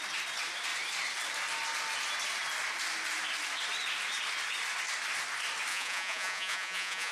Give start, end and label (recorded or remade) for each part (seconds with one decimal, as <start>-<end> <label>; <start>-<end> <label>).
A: 0.0-5.7 recorded; 5.7-7.1 remade